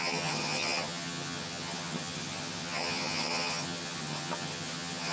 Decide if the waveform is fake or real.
fake